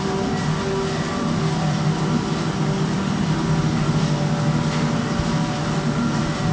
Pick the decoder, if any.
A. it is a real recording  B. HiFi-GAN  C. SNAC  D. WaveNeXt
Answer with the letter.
A